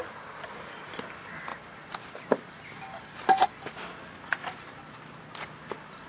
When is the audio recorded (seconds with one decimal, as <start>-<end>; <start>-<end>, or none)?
0.0-6.1